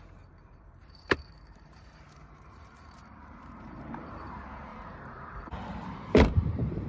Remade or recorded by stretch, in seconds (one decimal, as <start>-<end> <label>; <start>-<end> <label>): 0.0-6.9 remade